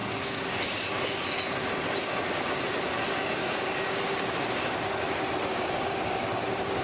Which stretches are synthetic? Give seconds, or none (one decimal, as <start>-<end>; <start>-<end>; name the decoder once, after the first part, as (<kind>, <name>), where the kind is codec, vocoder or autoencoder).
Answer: 0.0-0.6 (codec, DAC); 3.4-4.3; 5.5-6.3